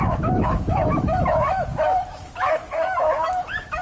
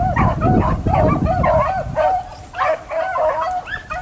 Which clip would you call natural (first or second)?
second